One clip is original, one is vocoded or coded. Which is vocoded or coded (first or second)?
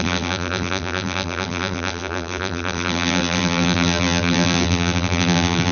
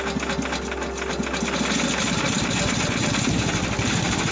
first